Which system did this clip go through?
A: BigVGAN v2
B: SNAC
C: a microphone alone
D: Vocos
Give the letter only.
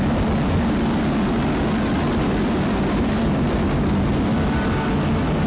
C